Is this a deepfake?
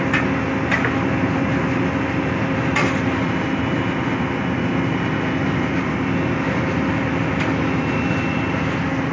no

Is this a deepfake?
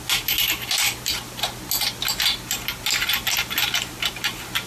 no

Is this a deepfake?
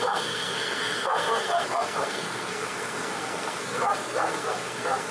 yes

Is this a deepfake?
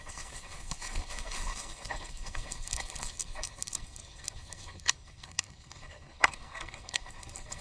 yes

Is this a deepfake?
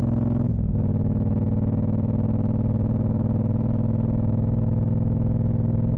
yes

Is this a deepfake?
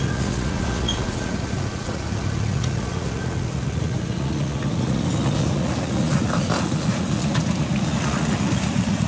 yes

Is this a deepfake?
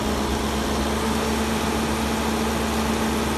no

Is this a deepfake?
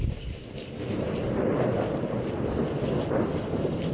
no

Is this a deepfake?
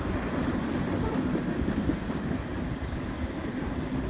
no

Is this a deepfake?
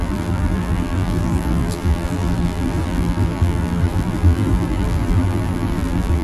yes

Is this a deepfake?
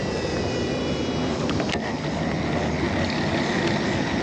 no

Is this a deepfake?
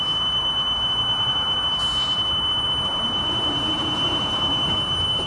yes